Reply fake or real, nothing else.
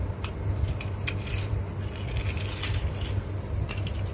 real